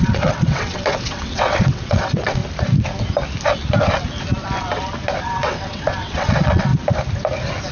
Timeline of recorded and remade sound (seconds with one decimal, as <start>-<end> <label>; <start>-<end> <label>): 0.0-2.4 remade; 2.4-5.2 recorded; 5.2-6.7 remade; 6.7-7.7 recorded